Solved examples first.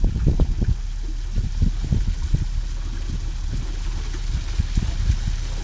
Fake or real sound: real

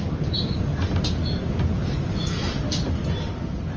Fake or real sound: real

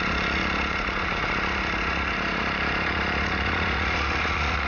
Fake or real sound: fake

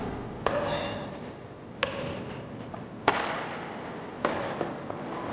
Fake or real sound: real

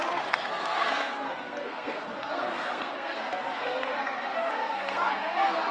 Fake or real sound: fake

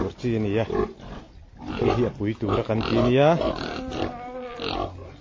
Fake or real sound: real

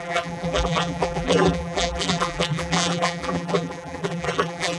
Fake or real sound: fake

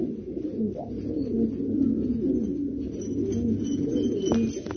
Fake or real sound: real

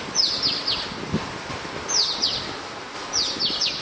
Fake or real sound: real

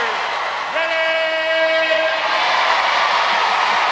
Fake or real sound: real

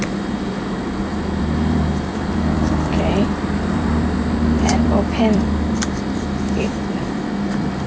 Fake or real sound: fake